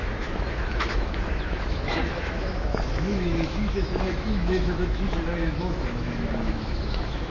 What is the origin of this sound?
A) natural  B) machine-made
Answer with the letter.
B